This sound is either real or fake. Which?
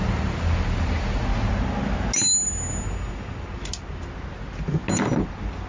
real